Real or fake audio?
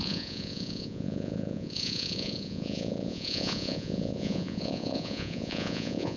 fake